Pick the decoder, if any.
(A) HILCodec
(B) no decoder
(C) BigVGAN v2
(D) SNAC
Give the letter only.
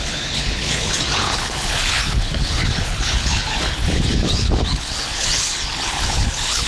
A